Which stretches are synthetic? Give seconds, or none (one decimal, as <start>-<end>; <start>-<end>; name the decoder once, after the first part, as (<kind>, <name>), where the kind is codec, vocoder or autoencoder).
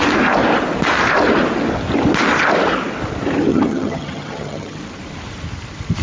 3.5-4.8 (vocoder, HiFi-GAN)